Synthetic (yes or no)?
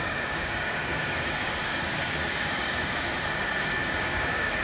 yes